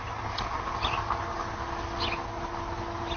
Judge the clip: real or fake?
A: real